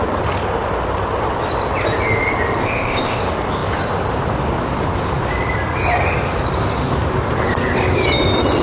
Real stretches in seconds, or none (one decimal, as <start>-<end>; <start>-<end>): 0.0-2.6; 3.2-8.6

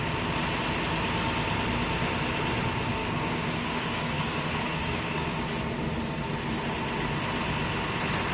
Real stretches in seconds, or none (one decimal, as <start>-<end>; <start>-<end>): 0.0-3.0; 5.4-8.3

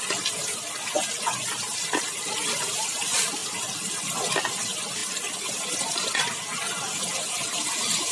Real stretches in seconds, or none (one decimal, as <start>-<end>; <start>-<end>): 0.0-8.1